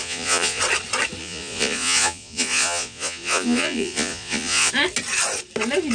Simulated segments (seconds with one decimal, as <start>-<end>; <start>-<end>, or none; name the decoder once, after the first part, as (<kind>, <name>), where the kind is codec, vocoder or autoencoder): 0.0-0.6 (vocoder, Vocos); 1.2-4.7